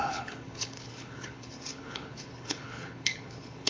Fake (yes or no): yes